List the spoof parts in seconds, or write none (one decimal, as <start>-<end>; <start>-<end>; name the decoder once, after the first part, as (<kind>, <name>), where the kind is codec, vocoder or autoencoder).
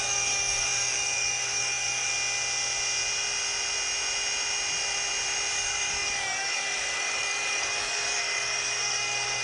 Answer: 0.0-2.1 (codec, DAC); 5.5-9.4